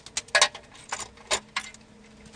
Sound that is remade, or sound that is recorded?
recorded